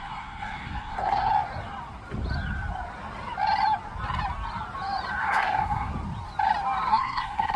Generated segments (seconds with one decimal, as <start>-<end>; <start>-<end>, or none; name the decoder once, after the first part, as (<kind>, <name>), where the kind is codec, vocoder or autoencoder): 0.0-1.3 (codec, SNAC); 5.2-5.9; 6.9-7.6